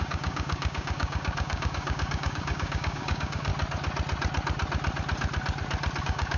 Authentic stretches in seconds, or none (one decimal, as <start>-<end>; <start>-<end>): 3.5-6.0